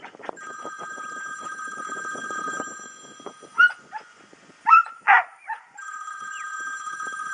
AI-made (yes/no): yes